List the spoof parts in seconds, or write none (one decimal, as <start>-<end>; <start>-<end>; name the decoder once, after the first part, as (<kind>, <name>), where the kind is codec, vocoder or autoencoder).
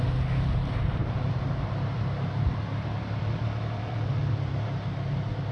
1.0-4.3 (vocoder, BigVGAN v2)